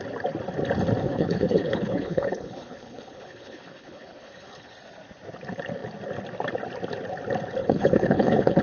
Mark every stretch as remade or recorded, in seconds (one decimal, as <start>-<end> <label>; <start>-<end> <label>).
0.0-1.0 recorded; 1.0-4.7 remade; 4.7-7.6 recorded; 7.6-8.6 remade